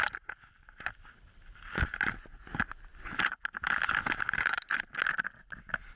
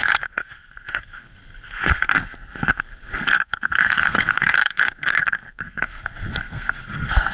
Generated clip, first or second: second